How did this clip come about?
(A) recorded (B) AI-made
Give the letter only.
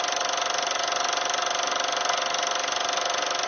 A